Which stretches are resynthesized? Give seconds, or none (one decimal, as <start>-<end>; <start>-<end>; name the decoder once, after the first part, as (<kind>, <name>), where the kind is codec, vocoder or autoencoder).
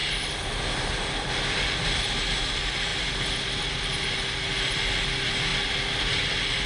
0.0-1.3 (vocoder, BigVGAN v2)